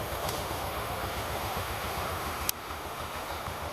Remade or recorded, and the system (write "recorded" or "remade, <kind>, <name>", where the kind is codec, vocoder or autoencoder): remade, autoencoder, DAC-VAE